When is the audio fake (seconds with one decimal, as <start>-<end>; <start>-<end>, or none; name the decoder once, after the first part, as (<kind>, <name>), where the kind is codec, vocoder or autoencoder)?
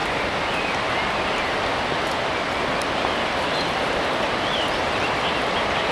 none